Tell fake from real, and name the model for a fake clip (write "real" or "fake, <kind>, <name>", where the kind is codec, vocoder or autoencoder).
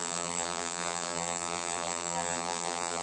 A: fake, vocoder, BigVGAN v2